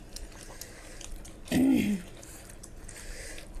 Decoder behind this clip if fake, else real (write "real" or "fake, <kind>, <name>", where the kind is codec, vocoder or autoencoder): real